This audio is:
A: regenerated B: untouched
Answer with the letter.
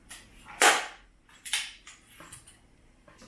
B